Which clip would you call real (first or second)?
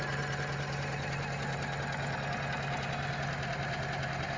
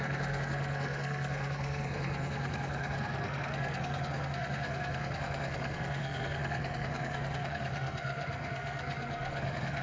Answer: first